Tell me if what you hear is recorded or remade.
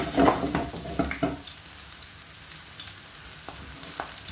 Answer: recorded